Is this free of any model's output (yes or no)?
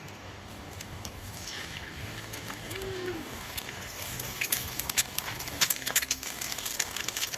no